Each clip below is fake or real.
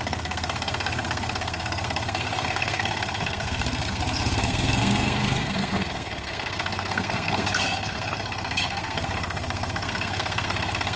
fake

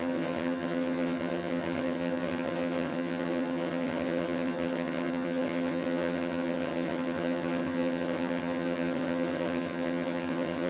fake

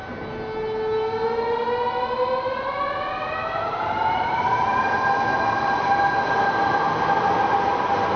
real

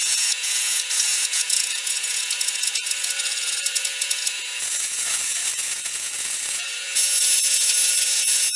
fake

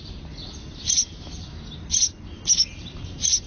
real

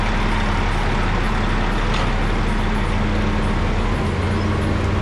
real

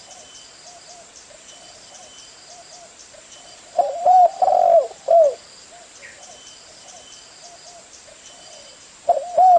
fake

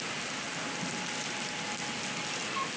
real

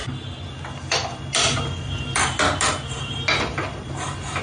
real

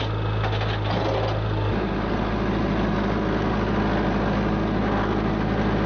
real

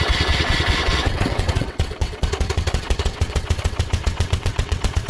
fake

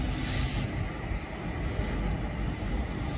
real